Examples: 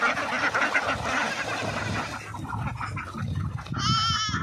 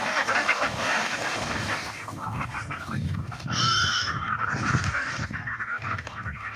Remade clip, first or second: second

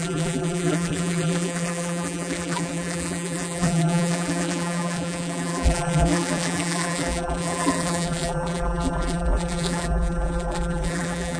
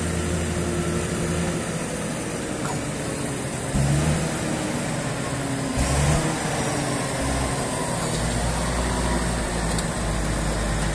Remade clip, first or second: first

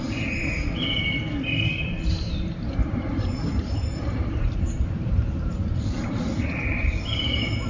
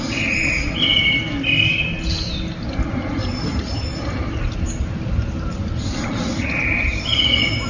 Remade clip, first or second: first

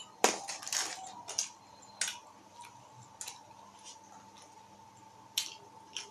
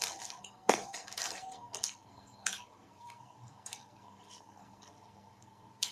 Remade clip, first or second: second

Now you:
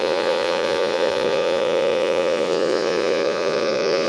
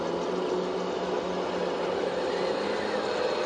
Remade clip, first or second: first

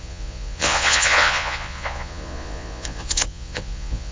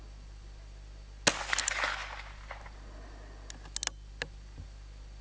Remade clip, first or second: first